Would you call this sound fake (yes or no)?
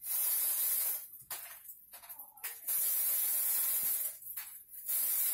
yes